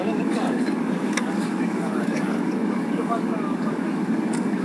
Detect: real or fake fake